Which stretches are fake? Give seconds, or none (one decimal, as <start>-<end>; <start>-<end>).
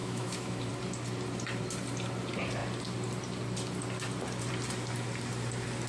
0.0-0.7